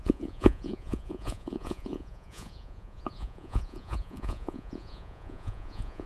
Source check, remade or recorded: remade